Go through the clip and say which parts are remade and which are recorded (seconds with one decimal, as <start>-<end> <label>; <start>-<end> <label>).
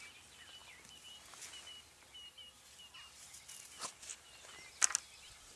0.0-5.6 recorded